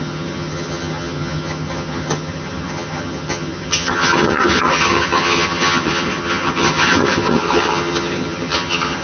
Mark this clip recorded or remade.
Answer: remade